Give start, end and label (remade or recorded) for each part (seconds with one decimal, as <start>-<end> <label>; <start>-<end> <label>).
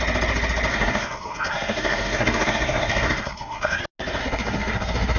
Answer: 0.0-0.7 recorded; 0.7-3.8 remade; 3.8-4.2 recorded; 4.2-5.2 remade